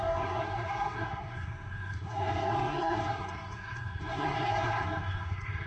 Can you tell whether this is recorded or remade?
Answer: remade